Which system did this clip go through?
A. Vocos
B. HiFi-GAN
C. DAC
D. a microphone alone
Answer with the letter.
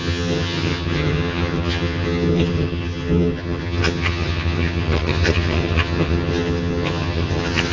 B